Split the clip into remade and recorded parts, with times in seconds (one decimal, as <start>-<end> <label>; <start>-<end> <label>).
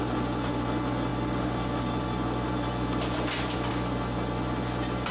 0.0-5.1 recorded